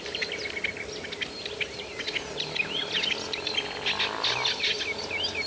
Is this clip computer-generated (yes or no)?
no